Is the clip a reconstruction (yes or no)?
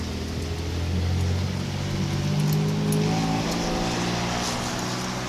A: no